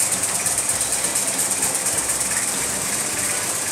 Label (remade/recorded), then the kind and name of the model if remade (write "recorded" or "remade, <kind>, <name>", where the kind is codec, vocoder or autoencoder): remade, vocoder, BigVGAN v2